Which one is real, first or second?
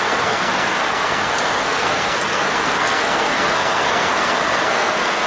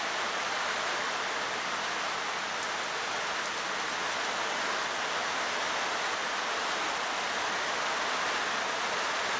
second